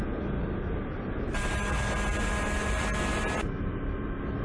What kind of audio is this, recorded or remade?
recorded